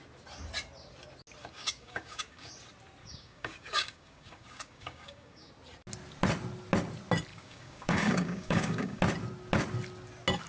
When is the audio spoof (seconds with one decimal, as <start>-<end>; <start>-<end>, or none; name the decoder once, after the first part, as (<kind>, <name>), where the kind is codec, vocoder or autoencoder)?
1.4-2.5 (codec, DAC); 3.0-5.5; 7.3-9.0